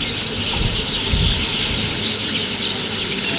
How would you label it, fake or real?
real